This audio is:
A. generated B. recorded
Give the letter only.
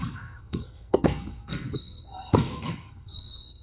A